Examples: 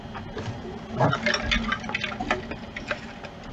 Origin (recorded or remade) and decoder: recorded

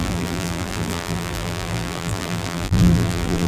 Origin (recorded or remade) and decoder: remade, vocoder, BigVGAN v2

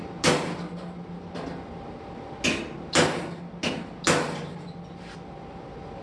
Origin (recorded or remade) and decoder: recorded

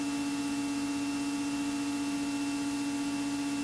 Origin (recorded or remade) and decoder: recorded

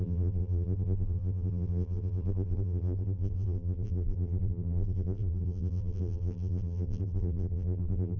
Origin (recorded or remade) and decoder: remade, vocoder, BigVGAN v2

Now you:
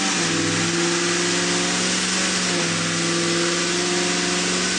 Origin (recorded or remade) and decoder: recorded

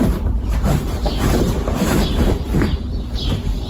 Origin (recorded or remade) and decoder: remade, vocoder, BigVGAN v2